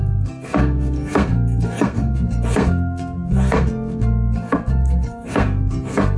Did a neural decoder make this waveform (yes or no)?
yes